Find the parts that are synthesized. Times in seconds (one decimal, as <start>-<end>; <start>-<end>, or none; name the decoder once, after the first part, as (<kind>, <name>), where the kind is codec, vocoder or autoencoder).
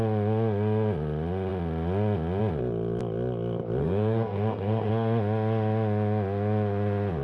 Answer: 3.8-4.9 (codec, SNAC)